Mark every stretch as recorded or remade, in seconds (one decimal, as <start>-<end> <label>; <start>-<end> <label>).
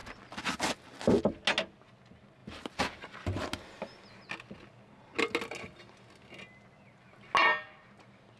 0.0-8.4 recorded